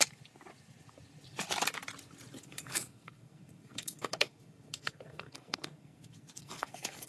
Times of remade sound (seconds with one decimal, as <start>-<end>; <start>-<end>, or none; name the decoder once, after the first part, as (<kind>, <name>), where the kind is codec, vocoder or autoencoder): 2.4-7.1 (codec, SNAC)